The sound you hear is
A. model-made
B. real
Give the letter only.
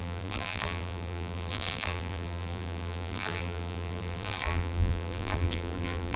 A